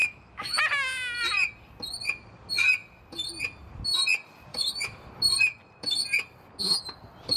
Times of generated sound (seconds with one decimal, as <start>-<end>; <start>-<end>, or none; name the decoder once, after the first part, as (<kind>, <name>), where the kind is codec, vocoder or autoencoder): 0.0-0.6 (autoencoder, DAC-VAE); 4.5-5.0

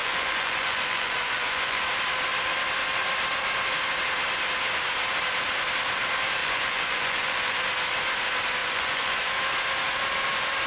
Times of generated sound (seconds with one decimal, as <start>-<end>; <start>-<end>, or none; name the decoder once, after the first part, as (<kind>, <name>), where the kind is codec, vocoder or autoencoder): 0.0-1.8 (vocoder, Vocos); 6.4-7.6; 8.6-9.3

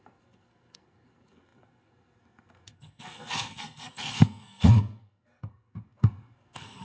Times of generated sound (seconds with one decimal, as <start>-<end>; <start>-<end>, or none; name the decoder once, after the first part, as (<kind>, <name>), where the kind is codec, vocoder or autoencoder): 0.0-6.8 (codec, SNAC)

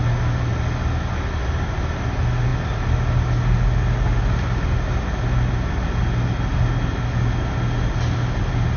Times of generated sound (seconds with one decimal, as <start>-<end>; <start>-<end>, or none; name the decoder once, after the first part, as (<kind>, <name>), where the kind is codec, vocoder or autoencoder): none

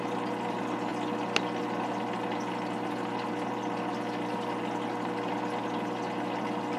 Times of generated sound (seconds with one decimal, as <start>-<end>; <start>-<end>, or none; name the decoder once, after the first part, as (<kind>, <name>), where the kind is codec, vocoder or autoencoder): none

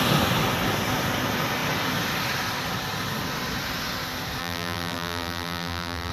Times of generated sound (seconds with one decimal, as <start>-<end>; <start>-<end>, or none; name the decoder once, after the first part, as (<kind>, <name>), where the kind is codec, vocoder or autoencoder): 4.4-6.1 (vocoder, BigVGAN v2)

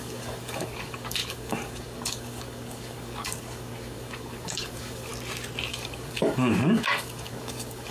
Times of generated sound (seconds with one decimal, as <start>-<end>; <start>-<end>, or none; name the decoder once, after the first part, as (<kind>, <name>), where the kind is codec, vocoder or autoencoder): 0.0-5.1 (codec, DAC); 5.7-7.9

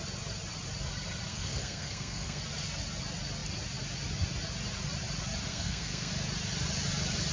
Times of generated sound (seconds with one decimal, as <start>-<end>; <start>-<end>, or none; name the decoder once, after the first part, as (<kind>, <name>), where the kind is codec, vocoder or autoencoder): 1.3-2.4 (codec, SNAC); 5.5-6.1